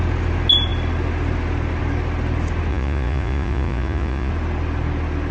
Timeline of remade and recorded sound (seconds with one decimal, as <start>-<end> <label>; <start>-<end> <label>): 0.0-2.7 recorded; 2.7-4.3 remade; 4.3-5.3 recorded